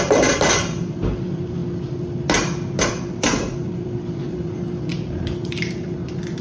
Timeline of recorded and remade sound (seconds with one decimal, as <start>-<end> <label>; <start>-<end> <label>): 0.0-1.6 remade; 1.6-2.8 recorded; 2.8-6.4 remade